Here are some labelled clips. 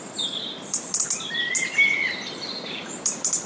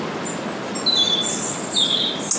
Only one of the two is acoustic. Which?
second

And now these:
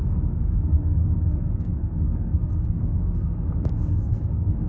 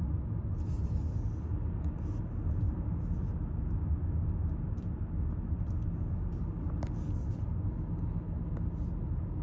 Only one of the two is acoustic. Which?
second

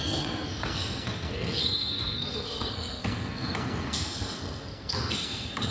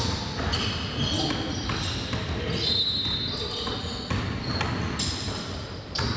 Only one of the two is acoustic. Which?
second